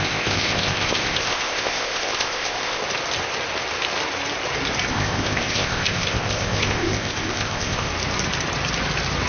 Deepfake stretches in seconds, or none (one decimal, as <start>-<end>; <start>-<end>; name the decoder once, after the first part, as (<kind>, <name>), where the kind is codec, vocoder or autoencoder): 0.0-2.8 (codec, ZipCodec); 4.9-7.9